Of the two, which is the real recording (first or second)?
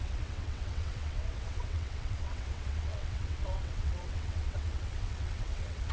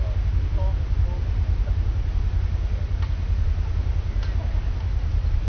second